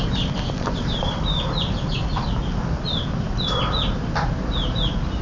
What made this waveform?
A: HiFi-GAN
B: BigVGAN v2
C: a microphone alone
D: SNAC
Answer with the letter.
C